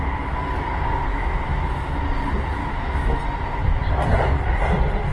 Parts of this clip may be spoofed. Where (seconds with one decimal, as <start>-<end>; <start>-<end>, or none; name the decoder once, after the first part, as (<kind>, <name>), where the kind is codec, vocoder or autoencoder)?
1.1-2.0 (autoencoder, DAC-VAE); 2.6-3.2

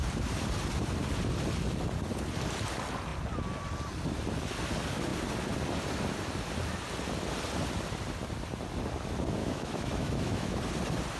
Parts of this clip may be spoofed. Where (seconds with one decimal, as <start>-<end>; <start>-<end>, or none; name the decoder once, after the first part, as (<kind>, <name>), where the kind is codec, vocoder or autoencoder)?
9.4-10.6 (autoencoder, DAC-VAE)

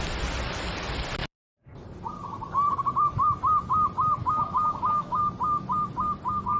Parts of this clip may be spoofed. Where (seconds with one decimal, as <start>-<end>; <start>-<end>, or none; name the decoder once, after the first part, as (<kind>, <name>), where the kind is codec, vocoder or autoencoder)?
4.2-5.2 (autoencoder, DAC-VAE)